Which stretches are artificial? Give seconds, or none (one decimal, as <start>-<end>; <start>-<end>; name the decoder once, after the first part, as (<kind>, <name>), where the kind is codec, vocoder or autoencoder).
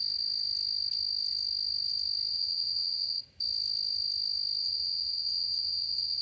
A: 2.3-3.2 (vocoder, WaveNeXt); 4.6-6.2